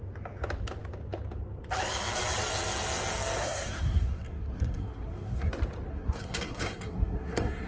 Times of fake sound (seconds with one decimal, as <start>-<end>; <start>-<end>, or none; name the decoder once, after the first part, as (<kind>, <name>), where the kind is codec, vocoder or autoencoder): 3.4-5.5 (codec, SNAC); 5.9-7.7